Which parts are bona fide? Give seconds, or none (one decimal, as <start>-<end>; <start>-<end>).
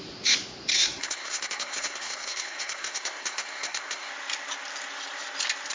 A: 0.0-0.7; 4.1-5.7